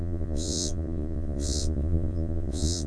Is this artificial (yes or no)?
yes